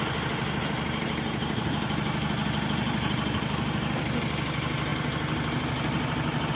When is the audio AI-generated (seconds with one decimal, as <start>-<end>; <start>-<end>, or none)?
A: none